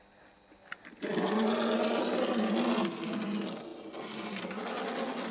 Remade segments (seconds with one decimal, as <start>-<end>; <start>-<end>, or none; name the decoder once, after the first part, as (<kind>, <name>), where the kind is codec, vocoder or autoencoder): none